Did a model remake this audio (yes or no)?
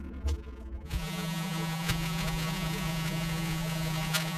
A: yes